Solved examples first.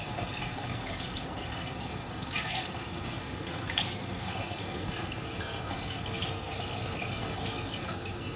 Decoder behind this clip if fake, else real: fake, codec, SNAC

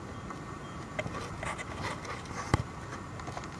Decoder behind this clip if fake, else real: real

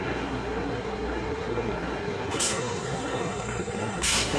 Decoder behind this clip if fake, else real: fake, codec, SNAC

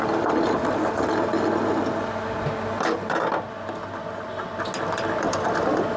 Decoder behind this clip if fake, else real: real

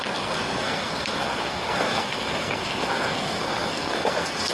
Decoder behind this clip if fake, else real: fake, codec, SNAC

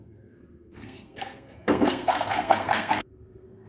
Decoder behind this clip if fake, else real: fake, codec, SNAC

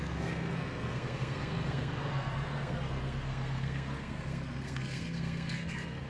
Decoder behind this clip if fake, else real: fake, codec, SNAC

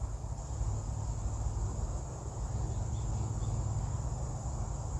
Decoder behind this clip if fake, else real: real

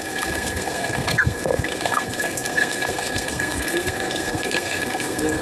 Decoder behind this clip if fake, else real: fake, codec, SNAC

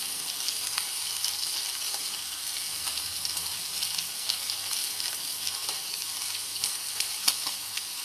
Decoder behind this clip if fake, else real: fake, codec, SNAC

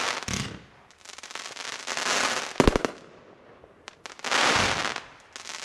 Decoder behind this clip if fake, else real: real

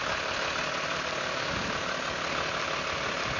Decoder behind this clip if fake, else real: real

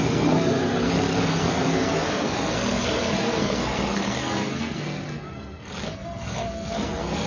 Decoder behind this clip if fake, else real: fake, codec, SNAC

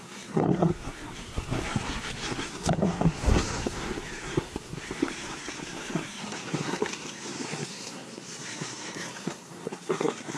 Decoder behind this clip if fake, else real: fake, codec, SNAC